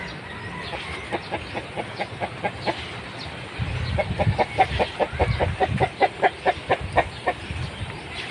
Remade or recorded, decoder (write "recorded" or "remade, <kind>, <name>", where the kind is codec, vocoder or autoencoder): recorded